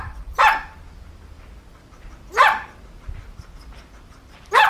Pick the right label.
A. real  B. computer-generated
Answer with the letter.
A